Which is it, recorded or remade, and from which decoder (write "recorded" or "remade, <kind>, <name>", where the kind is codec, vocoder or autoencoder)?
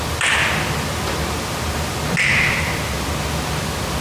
recorded